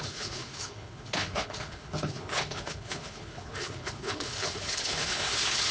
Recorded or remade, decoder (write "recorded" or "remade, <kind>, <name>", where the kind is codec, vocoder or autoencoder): remade, codec, HILCodec